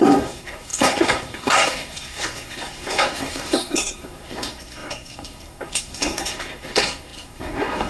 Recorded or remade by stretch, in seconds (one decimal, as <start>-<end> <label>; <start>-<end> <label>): 0.0-7.9 remade